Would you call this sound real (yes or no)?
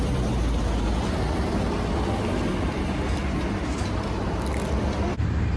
yes